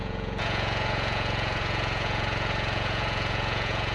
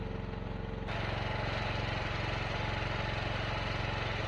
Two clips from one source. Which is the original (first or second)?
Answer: second